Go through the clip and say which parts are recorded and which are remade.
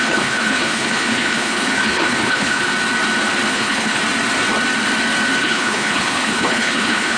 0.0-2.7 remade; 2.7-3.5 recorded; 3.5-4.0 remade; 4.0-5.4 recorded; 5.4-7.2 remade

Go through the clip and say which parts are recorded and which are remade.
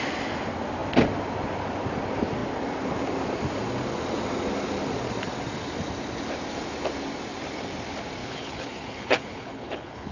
0.0-8.2 recorded; 8.2-10.1 remade